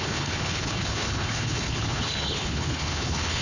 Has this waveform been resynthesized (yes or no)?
yes